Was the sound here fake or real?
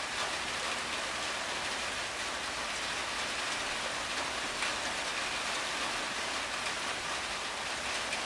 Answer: real